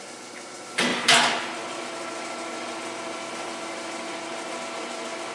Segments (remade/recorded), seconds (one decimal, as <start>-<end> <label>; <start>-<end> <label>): 0.0-5.3 recorded